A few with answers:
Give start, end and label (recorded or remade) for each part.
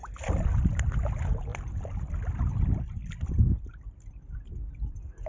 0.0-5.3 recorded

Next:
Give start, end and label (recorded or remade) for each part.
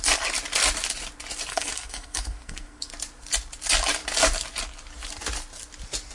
0.0-1.5 recorded; 1.5-2.9 remade; 2.9-6.1 recorded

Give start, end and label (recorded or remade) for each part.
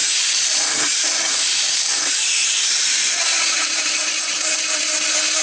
0.0-5.4 remade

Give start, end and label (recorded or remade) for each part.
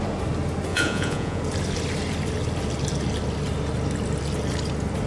0.0-0.7 recorded; 0.7-1.4 remade; 1.4-5.1 recorded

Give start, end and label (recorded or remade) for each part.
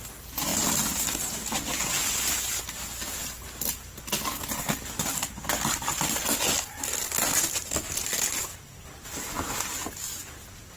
0.0-10.8 recorded